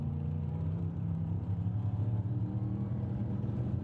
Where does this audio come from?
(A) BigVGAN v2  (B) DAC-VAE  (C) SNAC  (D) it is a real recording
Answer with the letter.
A